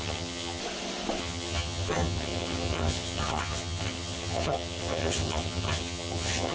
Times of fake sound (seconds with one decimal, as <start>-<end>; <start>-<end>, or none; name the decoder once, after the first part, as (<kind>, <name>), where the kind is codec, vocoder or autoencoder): 0.0-0.6 (vocoder, HiFi-GAN); 1.2-6.5